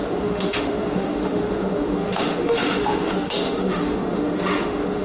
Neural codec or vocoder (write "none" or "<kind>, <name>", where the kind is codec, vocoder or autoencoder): autoencoder, DAC-VAE